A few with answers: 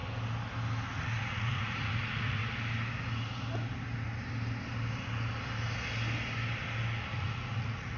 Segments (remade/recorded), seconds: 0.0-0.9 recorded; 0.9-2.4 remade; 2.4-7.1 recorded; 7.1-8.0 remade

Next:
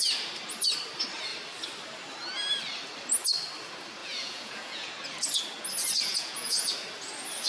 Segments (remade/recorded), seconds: 0.0-4.0 recorded; 4.0-4.9 remade; 4.9-6.1 recorded; 6.1-6.7 remade; 6.7-7.5 recorded

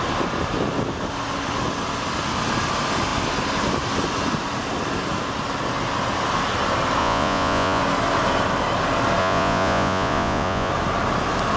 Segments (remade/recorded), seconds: 0.0-7.0 recorded; 7.0-7.8 remade; 7.8-9.2 recorded; 9.2-10.7 remade; 10.7-11.6 recorded

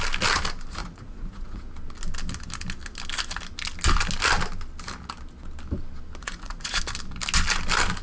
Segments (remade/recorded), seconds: 0.0-0.8 recorded; 0.8-1.7 remade; 1.7-6.2 recorded; 6.2-6.8 remade; 6.8-8.0 recorded

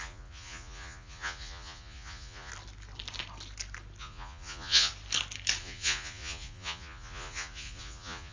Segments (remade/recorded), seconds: 0.0-2.5 remade; 2.5-4.0 recorded; 4.0-4.9 remade; 4.9-5.6 recorded; 5.6-8.3 remade

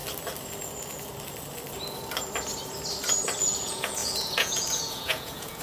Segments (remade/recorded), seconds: 0.0-3.4 recorded; 3.4-5.6 remade

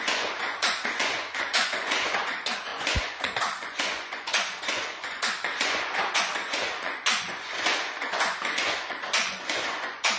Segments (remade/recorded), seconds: 0.0-10.2 remade